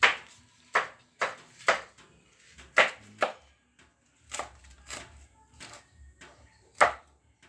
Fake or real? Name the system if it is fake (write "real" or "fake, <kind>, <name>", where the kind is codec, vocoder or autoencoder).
real